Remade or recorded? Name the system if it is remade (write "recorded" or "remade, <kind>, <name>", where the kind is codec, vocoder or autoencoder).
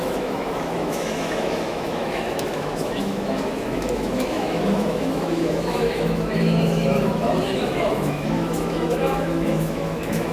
remade, autoencoder, DAC-VAE